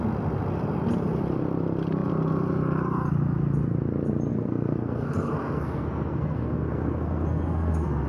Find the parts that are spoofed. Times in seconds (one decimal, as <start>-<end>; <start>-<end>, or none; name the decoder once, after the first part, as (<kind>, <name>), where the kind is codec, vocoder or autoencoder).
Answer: 4.3-8.1 (codec, SNAC)